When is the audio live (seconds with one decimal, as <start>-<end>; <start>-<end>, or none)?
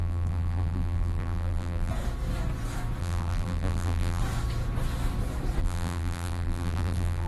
1.9-3.0; 4.2-5.6